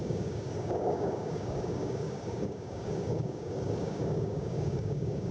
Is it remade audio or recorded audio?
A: remade